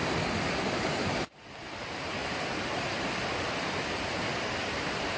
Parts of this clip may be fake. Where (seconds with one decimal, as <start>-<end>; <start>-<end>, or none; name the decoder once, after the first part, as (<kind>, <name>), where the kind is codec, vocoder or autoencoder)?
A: none